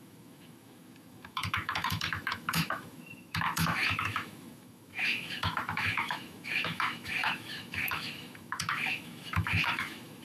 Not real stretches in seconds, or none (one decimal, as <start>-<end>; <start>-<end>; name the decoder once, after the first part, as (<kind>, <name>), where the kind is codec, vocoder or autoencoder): 0.0-10.2 (autoencoder, DAC-VAE)